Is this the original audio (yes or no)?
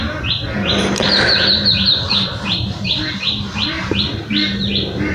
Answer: yes